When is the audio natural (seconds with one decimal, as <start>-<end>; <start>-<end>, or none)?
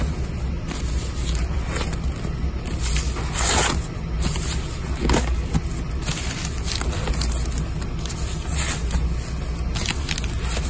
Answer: 0.0-5.0; 5.5-10.7